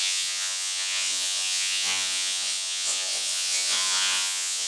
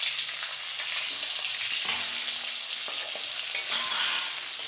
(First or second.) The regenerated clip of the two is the first